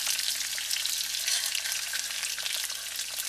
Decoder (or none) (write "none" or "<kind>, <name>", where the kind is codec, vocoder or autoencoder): none